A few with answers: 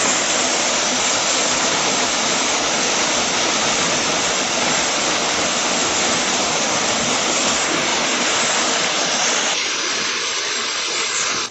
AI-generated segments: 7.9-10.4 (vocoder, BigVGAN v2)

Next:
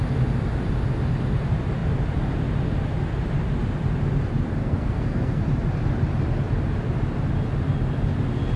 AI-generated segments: 4.6-5.4 (codec, SNAC)

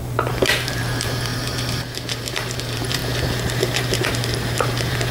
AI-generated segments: 0.0-5.1 (vocoder, BigVGAN v2)

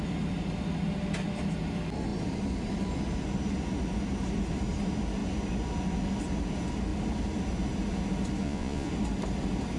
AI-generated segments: 8.4-8.9 (vocoder, Vocos)

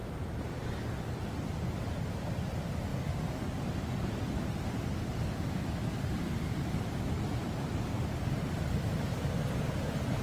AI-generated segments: 0.0-0.5 (vocoder, BigVGAN v2)

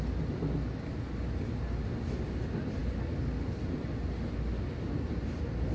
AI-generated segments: none

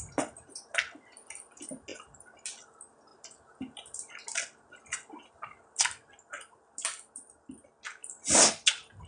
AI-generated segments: none

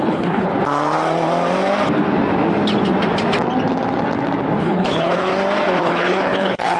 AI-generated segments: 0.0-0.5 (codec, HILCodec); 4.6-5.3; 5.8-6.8